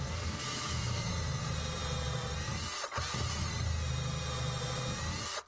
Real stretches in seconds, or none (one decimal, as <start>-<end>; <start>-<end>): 0.0-0.4; 1.1-5.5